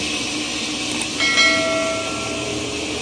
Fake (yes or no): no